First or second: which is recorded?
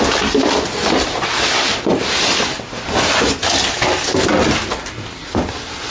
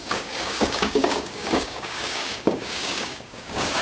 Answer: first